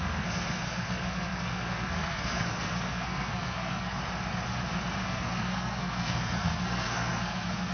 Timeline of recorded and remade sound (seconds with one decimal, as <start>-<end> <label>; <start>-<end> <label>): 0.0-4.0 remade; 4.0-5.0 recorded; 5.0-7.7 remade